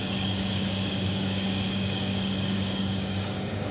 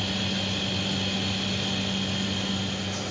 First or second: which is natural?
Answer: second